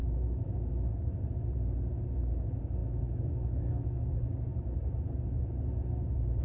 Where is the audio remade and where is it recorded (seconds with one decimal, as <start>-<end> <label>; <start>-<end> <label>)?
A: 0.0-1.3 remade; 1.3-2.8 recorded; 2.8-4.1 remade; 4.1-6.4 recorded